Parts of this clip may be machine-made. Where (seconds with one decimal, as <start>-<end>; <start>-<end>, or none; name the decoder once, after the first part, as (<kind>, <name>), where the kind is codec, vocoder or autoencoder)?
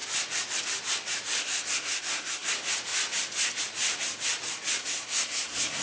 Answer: 1.4-2.5 (codec, SNAC); 4.8-5.8